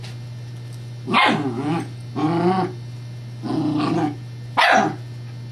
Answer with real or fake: real